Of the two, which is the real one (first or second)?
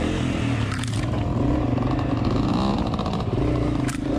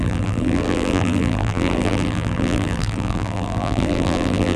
first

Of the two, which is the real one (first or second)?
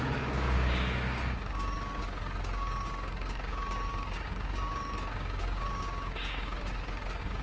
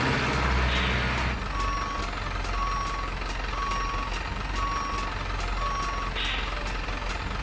second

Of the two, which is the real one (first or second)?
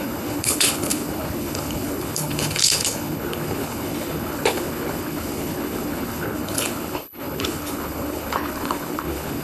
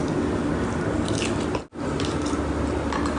second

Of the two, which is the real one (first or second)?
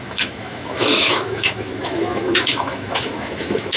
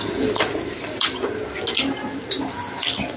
second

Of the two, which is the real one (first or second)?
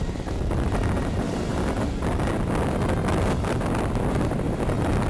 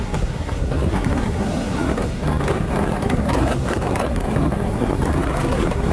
first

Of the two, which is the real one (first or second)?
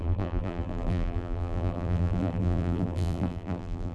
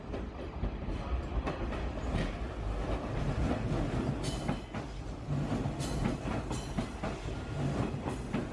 second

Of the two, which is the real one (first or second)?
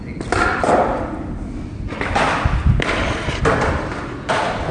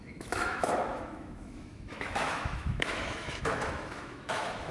first